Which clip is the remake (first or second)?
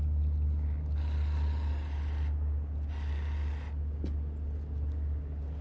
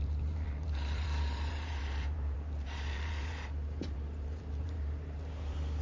second